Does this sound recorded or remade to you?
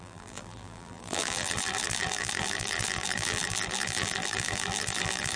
remade